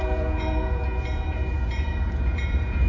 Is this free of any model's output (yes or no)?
no